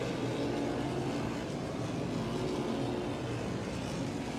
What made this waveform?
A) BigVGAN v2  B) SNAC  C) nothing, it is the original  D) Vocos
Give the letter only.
C